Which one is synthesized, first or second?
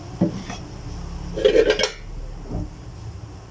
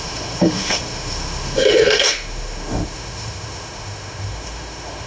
second